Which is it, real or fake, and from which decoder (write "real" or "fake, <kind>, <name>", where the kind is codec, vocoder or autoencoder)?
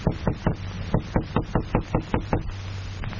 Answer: real